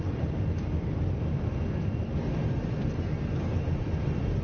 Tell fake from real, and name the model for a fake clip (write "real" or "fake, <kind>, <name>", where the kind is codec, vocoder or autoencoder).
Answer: fake, vocoder, BigVGAN v2